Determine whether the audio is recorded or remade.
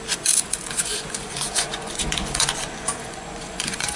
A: remade